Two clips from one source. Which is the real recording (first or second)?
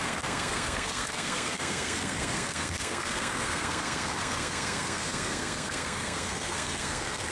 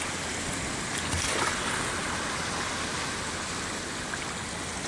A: second